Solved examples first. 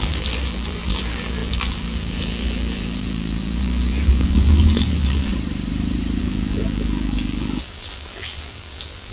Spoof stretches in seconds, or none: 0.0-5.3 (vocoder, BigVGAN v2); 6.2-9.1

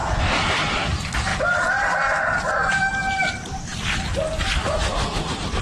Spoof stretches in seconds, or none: 0.0-3.7 (vocoder, BigVGAN v2)

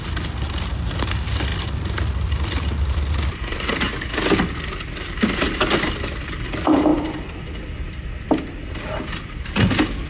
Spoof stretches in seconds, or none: 1.5-3.7 (vocoder, BigVGAN v2)

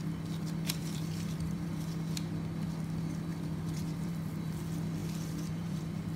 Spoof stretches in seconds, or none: 0.8-1.9 (vocoder, BigVGAN v2); 3.3-4.6; 5.0-5.8